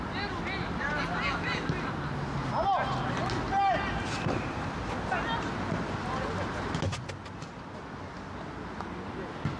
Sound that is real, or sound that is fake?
real